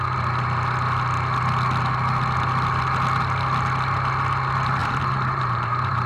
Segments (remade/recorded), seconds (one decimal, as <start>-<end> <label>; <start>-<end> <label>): 0.0-4.8 recorded; 4.8-6.1 remade